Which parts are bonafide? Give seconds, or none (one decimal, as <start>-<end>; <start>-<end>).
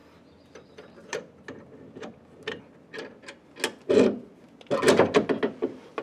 0.0-6.0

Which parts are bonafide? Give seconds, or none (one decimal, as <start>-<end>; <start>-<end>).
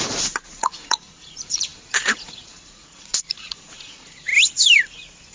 4.3-5.3